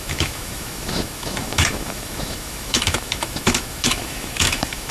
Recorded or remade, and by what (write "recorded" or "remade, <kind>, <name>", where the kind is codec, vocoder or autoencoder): remade, autoencoder, DAC-VAE